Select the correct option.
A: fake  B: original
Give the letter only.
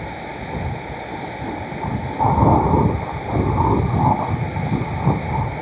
B